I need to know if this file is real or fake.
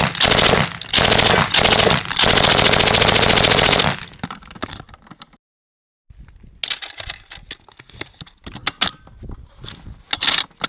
real